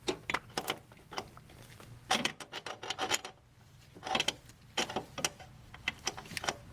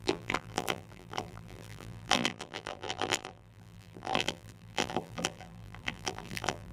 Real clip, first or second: first